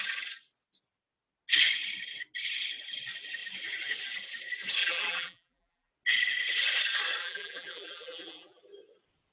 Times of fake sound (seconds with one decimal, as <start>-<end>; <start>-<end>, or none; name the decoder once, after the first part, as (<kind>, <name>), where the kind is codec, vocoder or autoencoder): 4.8-5.9 (vocoder, BigVGAN v2); 7.2-8.6